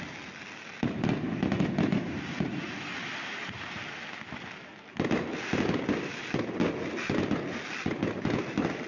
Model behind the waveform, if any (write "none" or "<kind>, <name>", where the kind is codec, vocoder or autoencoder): none